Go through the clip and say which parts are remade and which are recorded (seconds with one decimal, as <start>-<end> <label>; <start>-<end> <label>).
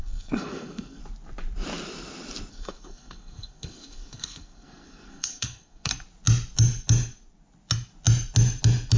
0.0-1.0 remade; 1.0-2.5 recorded; 2.5-5.9 remade; 5.9-9.0 recorded